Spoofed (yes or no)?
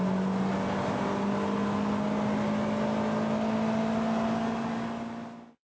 no